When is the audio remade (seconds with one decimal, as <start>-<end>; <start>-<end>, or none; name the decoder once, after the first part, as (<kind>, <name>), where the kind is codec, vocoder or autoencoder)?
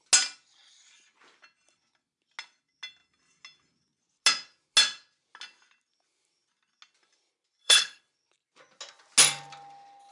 7.6-8.1 (codec, HILCodec)